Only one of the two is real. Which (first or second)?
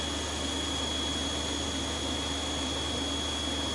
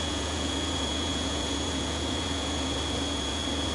first